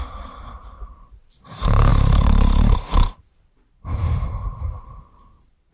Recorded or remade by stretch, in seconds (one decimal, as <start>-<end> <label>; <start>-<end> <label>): 0.0-5.7 remade